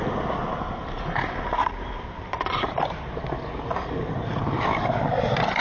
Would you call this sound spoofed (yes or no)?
no